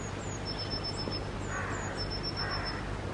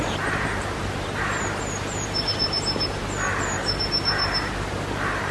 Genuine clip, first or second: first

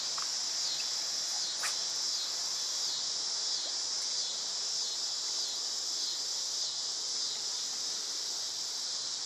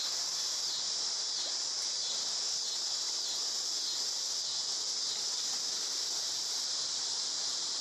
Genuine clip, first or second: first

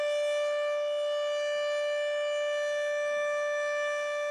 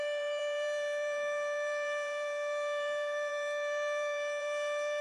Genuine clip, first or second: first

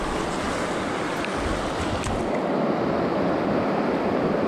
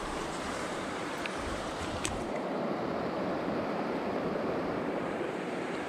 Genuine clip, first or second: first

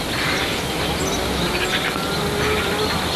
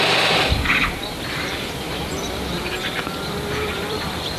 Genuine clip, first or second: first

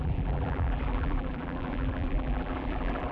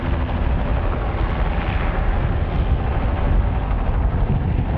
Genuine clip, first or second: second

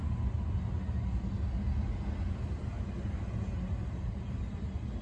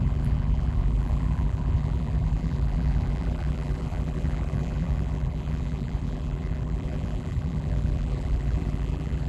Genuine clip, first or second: first